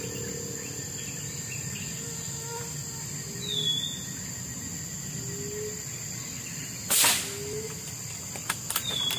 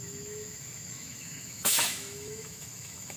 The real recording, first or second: first